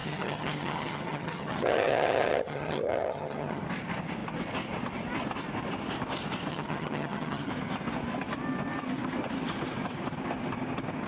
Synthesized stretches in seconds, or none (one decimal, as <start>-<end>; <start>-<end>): 0.0-3.6; 6.5-7.5